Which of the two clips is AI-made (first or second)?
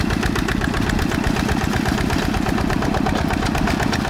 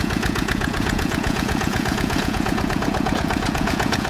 second